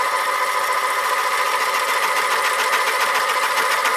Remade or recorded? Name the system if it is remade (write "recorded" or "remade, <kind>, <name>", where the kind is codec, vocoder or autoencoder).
recorded